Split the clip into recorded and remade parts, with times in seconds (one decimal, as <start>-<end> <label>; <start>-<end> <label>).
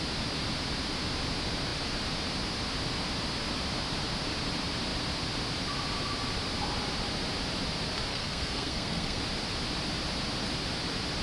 0.0-8.1 recorded; 8.1-9.2 remade; 9.2-11.2 recorded